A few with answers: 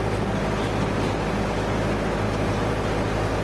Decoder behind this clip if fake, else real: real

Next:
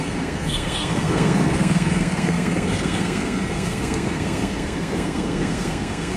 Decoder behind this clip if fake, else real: fake, codec, SNAC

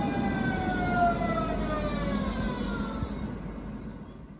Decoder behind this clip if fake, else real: real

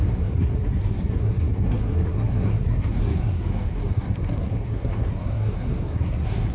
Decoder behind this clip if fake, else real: fake, codec, SNAC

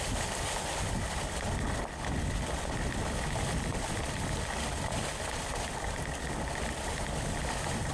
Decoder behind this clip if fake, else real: real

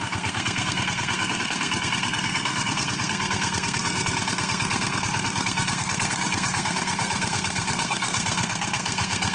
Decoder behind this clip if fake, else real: fake, codec, SNAC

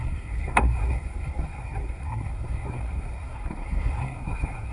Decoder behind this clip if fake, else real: fake, codec, SNAC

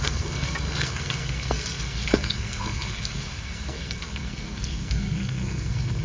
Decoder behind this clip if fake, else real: fake, codec, SNAC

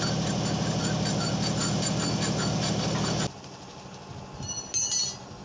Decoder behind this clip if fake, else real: real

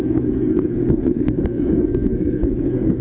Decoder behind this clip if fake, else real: fake, codec, SNAC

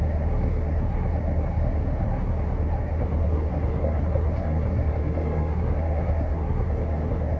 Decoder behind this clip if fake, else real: fake, codec, SNAC